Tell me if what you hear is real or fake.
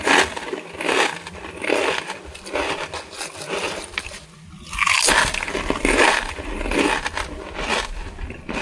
real